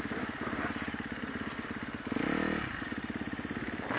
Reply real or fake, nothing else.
real